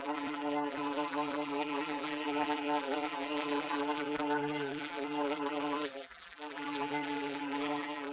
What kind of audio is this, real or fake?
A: fake